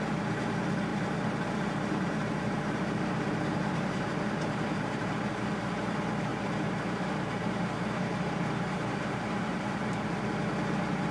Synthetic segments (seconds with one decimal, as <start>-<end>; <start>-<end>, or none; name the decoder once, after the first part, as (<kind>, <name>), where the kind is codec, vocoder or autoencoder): 0.9-5.3 (vocoder, BigVGAN v2); 6.3-10.1